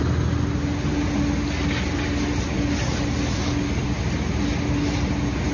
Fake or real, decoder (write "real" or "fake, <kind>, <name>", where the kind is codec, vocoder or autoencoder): real